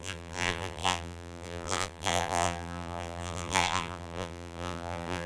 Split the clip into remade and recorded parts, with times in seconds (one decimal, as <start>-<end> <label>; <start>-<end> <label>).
0.0-5.3 remade